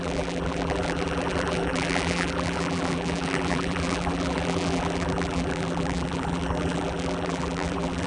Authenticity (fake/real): fake